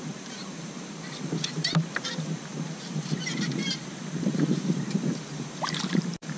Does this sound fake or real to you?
fake